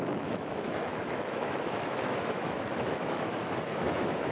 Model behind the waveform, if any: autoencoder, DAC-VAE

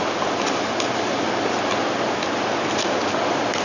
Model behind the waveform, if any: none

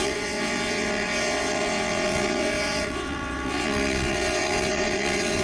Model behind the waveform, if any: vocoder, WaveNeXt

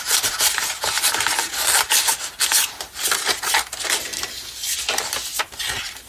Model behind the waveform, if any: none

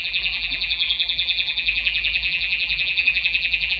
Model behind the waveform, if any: vocoder, BigVGAN v2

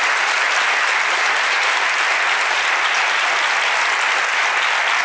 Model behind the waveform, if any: none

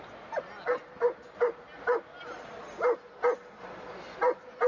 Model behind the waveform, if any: none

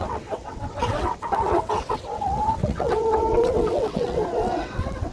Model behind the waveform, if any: vocoder, WaveNeXt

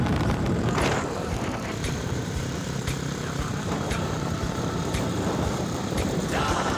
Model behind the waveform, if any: vocoder, BigVGAN v2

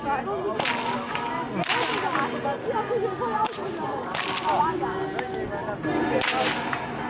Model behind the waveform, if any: none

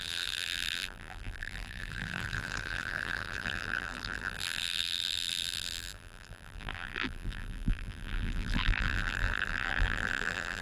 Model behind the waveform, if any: vocoder, BigVGAN v2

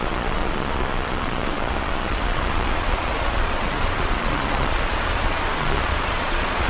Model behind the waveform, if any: vocoder, Vocos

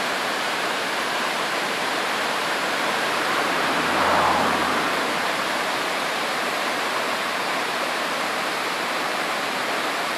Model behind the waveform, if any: vocoder, BigVGAN v2